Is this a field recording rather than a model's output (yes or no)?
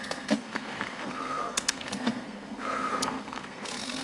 no